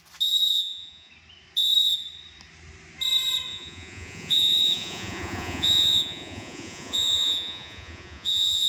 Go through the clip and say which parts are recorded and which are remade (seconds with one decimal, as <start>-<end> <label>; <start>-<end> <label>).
0.0-0.5 recorded; 0.5-1.1 remade; 1.1-3.5 recorded; 3.5-8.7 remade